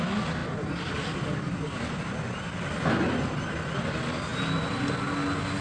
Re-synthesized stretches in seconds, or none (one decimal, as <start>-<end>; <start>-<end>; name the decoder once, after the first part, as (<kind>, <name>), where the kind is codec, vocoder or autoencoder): 4.3-4.8 (vocoder, BigVGAN v2)